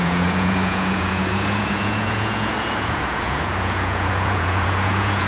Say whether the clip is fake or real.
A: fake